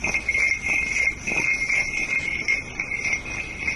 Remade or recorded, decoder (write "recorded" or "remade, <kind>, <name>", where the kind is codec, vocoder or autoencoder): recorded